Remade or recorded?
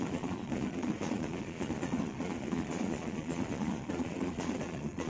remade